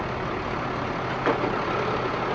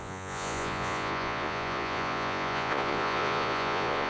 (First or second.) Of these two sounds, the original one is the first